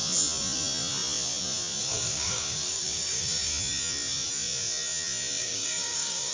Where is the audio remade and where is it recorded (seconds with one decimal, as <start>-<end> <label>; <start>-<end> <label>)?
0.0-1.8 recorded; 1.8-3.5 remade; 3.5-5.4 recorded; 5.4-6.3 remade